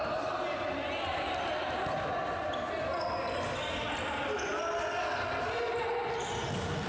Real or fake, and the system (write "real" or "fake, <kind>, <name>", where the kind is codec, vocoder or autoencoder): real